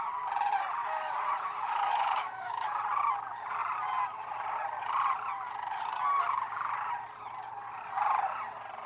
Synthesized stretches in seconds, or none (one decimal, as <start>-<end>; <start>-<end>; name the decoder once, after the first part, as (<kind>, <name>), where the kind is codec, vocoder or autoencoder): 0.8-2.8 (autoencoder, DAC-VAE)